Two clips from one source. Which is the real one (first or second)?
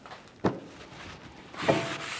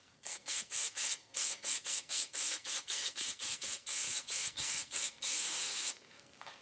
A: first